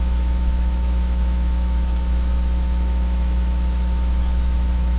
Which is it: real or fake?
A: fake